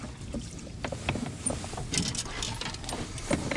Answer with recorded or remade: recorded